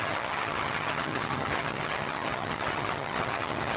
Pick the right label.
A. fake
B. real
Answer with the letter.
A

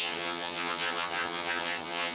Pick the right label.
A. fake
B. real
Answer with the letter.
A